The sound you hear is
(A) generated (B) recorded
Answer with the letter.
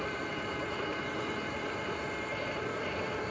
B